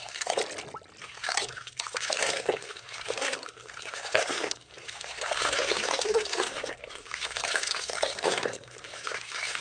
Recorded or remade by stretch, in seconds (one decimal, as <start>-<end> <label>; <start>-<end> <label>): 0.0-0.4 remade; 0.4-1.0 recorded; 1.0-9.6 remade